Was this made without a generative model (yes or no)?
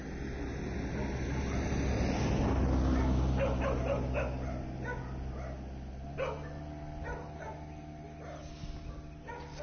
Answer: yes